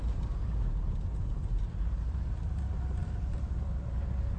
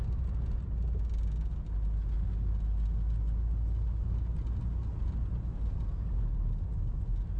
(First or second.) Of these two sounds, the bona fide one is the second